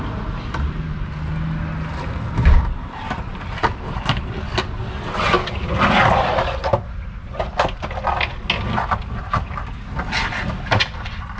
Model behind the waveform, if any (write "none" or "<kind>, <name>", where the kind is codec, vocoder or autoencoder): none